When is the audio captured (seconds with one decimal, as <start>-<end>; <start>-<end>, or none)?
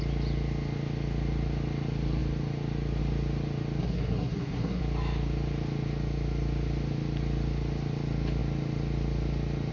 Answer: 0.0-3.8; 4.8-9.7